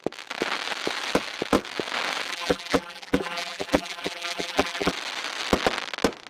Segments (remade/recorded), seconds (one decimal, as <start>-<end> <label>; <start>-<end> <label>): 0.0-2.3 recorded; 2.3-4.9 remade; 4.9-6.3 recorded